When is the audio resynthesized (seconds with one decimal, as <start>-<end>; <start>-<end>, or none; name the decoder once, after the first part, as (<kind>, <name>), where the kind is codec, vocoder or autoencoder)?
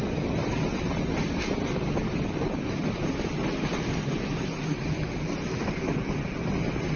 none